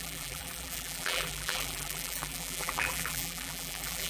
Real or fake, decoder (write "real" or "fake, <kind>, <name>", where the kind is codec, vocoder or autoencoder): fake, vocoder, BigVGAN v2